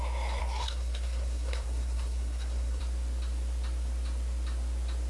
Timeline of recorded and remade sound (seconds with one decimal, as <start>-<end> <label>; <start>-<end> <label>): 0.0-0.4 recorded; 0.4-2.8 remade; 2.8-5.1 recorded